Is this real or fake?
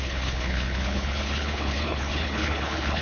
fake